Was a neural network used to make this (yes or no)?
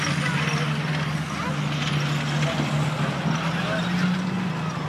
no